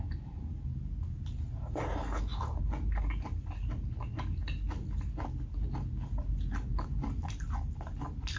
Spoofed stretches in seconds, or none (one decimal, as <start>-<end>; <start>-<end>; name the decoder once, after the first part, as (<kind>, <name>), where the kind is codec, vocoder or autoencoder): none